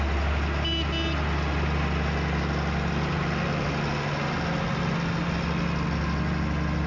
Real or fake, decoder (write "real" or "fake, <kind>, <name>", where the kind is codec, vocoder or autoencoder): real